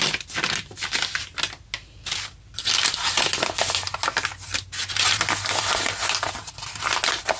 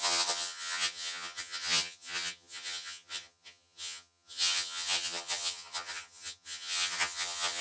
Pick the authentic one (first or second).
first